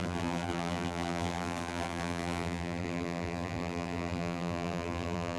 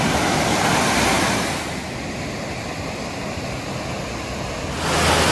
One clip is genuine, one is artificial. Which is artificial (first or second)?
first